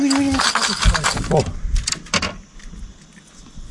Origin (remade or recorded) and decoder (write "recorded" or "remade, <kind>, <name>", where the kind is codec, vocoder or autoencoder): recorded